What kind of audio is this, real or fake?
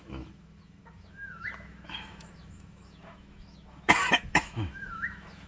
fake